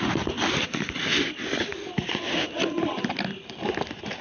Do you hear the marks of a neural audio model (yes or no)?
no